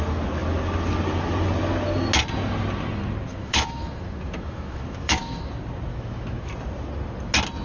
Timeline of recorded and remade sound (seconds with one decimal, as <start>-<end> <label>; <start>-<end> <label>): 0.0-3.3 recorded; 3.3-5.5 remade; 5.5-5.9 recorded; 5.9-6.5 remade; 6.5-7.6 recorded